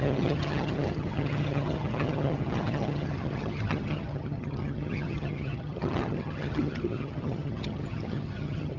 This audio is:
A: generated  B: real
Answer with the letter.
A